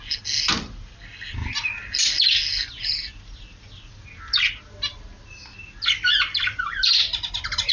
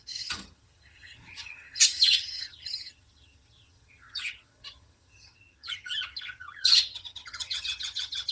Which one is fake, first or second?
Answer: second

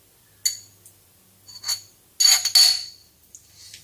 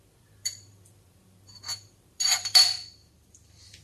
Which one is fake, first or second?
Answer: second